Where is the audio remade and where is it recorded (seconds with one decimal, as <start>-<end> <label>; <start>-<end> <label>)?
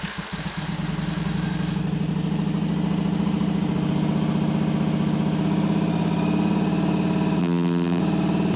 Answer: 0.0-7.4 recorded; 7.4-8.0 remade; 8.0-8.6 recorded